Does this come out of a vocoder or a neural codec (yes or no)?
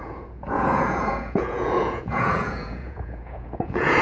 yes